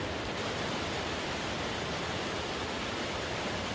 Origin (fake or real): real